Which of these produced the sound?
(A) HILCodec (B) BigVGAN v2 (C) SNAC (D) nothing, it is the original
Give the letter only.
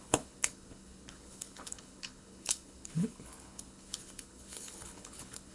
A